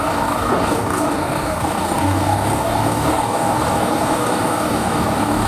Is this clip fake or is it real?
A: fake